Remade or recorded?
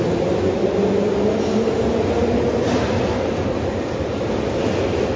recorded